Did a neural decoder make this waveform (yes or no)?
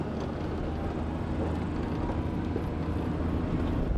no